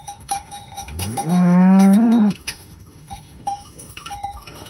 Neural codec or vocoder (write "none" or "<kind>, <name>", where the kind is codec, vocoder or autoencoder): autoencoder, DAC-VAE